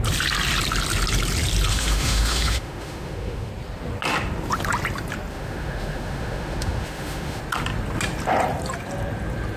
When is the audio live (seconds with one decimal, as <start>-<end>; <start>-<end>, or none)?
0.0-1.7; 3.5-5.3; 7.4-9.6